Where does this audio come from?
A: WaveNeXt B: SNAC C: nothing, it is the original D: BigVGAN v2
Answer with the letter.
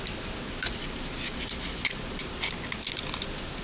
C